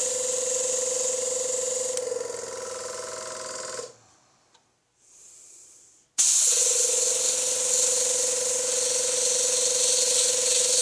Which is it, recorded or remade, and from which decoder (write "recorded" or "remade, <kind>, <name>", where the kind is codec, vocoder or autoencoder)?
recorded